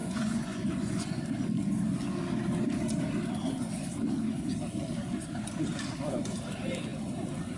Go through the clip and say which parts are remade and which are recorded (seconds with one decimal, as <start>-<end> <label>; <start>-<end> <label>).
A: 0.0-1.2 remade; 1.2-7.6 recorded